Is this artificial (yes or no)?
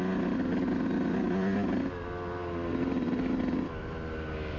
no